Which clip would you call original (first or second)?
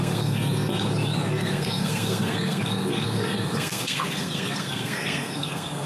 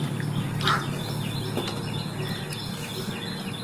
second